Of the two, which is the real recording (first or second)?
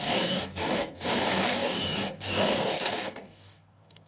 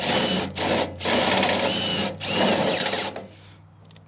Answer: second